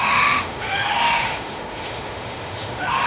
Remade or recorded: remade